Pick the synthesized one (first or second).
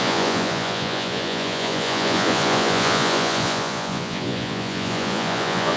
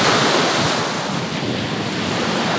first